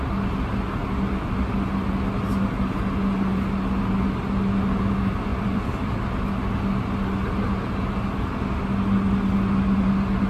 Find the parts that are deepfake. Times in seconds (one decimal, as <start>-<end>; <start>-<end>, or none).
5.3-6.3